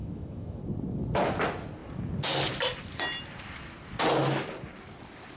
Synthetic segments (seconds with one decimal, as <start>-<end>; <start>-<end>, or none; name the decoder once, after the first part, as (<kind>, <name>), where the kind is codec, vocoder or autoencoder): 0.0-0.6 (autoencoder, DAC-VAE)